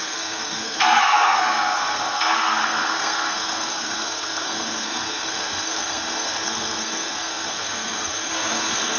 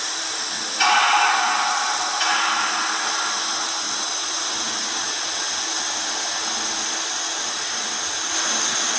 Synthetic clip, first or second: first